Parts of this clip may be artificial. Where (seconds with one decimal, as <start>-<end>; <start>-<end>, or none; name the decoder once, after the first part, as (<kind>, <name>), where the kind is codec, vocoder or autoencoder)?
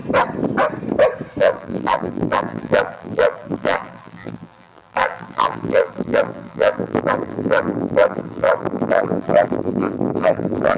1.4-10.8 (vocoder, BigVGAN v2)